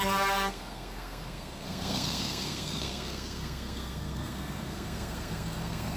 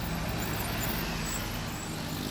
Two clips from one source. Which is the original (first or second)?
second